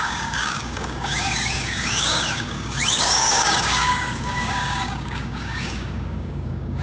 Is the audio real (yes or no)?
no